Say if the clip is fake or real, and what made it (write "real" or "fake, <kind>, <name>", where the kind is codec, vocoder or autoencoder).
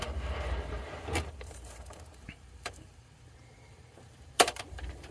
fake, vocoder, BigVGAN v2